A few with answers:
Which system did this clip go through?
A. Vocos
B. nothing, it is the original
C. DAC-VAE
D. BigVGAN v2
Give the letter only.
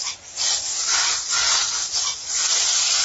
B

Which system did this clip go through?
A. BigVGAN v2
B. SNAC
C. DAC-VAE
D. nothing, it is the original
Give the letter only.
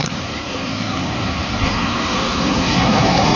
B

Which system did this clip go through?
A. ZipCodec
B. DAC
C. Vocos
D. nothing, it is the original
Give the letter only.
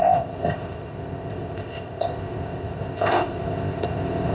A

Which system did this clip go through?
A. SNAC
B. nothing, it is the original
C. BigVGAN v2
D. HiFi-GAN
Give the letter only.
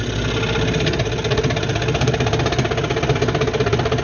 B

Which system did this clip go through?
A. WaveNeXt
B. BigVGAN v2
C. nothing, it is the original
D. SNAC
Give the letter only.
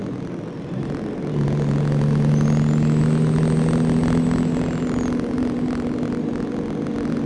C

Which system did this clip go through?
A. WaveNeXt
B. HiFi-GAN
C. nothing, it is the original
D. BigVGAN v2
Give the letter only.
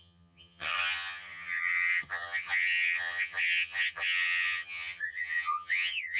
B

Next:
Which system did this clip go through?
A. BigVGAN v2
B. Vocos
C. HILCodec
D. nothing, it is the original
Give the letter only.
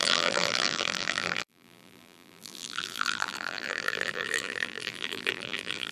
A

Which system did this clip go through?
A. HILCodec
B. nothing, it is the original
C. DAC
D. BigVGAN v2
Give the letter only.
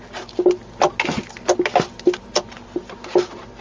B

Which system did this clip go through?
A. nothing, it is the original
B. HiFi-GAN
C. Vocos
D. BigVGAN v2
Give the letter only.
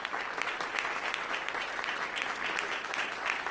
A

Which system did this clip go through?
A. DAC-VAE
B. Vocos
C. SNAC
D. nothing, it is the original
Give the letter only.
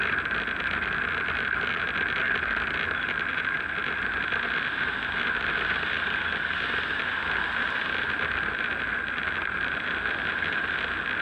D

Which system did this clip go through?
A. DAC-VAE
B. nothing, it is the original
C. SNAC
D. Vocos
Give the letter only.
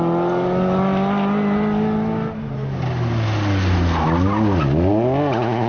B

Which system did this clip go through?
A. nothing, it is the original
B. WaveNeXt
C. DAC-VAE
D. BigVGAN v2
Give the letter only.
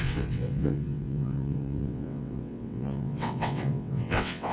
B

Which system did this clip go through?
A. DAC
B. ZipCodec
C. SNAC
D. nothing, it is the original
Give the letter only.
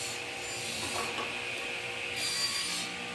D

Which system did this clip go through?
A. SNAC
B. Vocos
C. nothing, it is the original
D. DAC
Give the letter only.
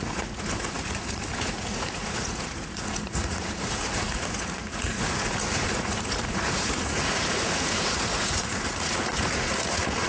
B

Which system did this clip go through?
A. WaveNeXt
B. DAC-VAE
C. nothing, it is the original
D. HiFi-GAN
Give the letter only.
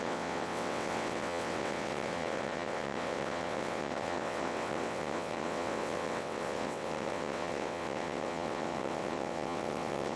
A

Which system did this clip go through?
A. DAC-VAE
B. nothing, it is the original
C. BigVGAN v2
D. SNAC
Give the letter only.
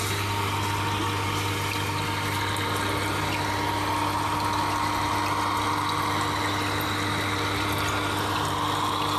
B